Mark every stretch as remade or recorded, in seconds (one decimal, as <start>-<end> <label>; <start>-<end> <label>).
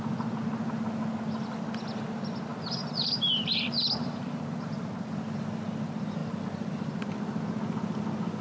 0.0-2.5 recorded; 2.5-4.4 remade; 4.4-8.4 recorded